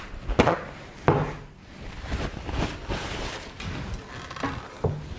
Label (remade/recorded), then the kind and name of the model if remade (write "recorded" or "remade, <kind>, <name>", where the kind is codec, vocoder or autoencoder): recorded